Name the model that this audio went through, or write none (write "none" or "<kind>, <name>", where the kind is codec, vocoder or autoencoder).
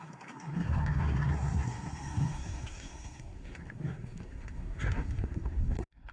codec, SNAC